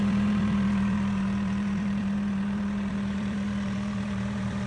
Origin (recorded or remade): remade